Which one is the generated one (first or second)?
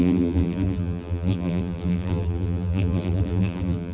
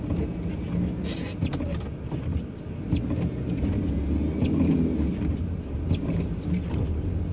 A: first